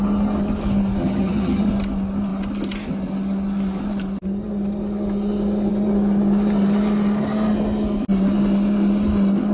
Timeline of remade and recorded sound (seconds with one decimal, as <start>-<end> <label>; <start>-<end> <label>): 0.0-1.0 recorded; 1.0-1.7 remade; 1.7-9.5 recorded